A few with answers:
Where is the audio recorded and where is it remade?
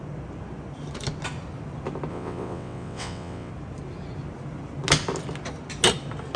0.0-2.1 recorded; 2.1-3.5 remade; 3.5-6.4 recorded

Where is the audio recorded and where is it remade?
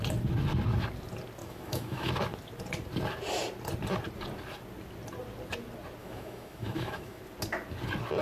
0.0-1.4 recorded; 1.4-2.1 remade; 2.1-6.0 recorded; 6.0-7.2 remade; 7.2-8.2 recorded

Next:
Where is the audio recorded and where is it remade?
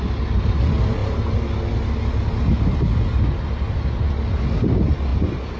0.0-5.6 recorded